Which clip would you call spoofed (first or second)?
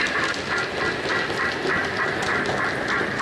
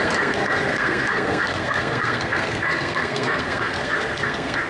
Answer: second